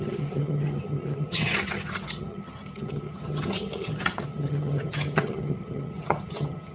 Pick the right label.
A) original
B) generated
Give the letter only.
B